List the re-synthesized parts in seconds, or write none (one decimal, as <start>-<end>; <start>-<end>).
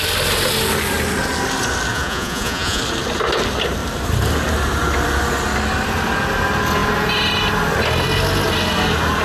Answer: 1.9-2.8